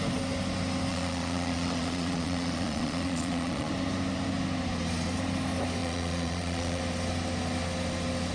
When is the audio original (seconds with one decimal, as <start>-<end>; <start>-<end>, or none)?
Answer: 0.0-0.9; 3.7-5.8; 6.8-8.3